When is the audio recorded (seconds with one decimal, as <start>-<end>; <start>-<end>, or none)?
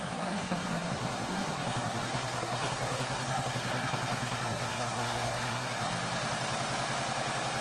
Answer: 5.9-7.6